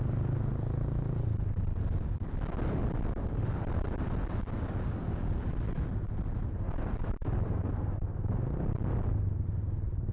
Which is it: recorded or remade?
recorded